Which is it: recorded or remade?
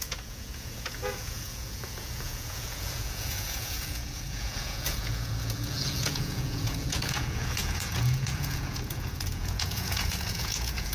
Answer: remade